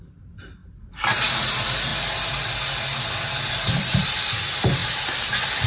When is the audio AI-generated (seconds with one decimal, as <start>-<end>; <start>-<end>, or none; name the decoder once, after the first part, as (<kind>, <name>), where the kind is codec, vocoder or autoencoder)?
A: 0.0-1.9 (vocoder, BigVGAN v2); 3.6-5.7